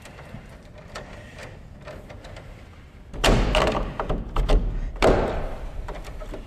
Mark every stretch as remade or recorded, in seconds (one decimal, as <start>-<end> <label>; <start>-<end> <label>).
0.0-1.4 remade; 1.4-5.3 recorded; 5.3-6.5 remade